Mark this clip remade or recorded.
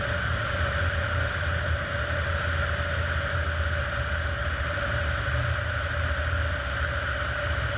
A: recorded